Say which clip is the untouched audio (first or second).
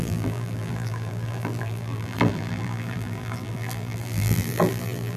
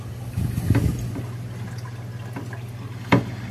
second